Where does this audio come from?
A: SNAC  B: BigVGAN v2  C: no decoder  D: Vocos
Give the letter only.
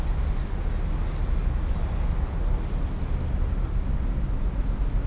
C